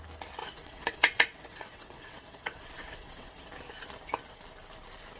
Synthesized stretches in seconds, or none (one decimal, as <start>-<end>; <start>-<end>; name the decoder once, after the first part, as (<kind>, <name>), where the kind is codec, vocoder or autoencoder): 0.4-3.5 (vocoder, WaveNeXt)